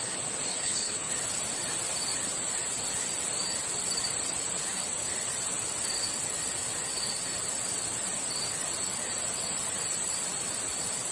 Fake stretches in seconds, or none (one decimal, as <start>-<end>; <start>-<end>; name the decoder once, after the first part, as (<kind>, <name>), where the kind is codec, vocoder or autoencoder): 0.5-1.1 (codec, HILCodec)